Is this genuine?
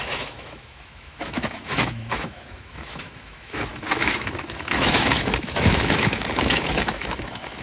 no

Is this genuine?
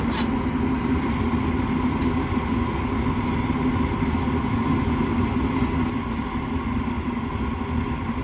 yes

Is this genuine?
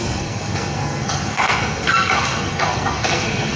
no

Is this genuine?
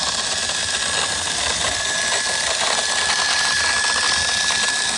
yes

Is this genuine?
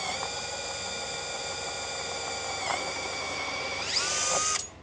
yes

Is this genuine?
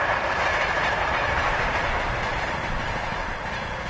yes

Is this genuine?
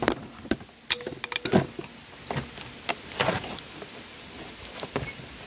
yes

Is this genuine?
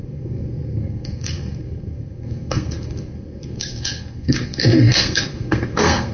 no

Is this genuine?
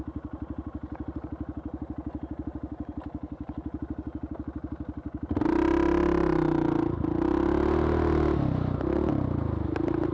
yes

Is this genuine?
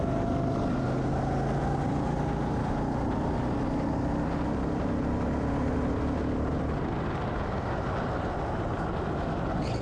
yes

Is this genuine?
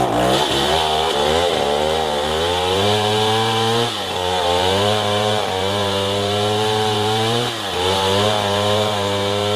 no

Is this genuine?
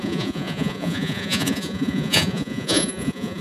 no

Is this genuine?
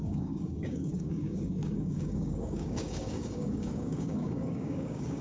no